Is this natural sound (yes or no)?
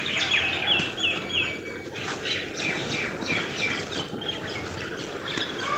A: yes